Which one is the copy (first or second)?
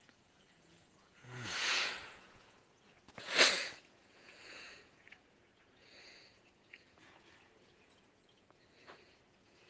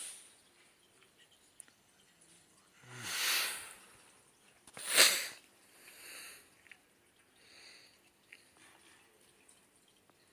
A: first